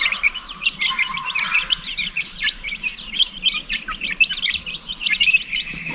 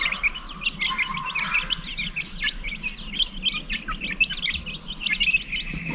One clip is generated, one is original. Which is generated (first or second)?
first